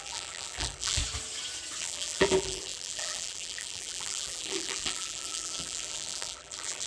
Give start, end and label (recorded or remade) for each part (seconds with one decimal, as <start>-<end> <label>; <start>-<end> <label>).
0.0-1.0 remade; 1.0-1.8 recorded; 1.8-6.9 remade